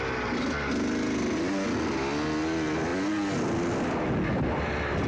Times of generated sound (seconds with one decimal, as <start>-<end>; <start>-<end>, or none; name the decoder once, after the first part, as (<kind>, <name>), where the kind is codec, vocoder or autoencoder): none